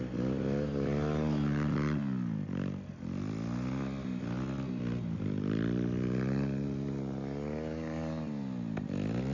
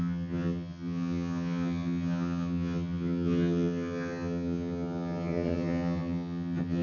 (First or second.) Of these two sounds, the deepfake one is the second